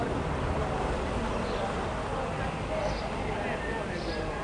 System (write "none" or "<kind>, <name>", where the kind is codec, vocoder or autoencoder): none